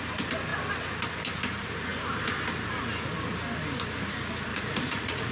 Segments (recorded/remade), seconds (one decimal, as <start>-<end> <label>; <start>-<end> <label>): 0.0-4.5 recorded; 4.5-5.3 remade